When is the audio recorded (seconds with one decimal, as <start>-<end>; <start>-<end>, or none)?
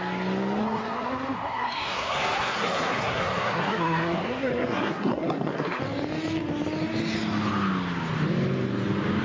0.0-0.6; 5.8-9.2